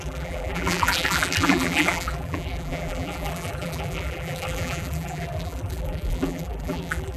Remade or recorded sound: remade